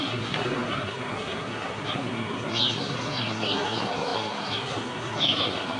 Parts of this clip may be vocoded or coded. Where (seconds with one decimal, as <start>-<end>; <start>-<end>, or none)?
0.0-5.8